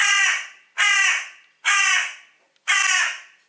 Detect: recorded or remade recorded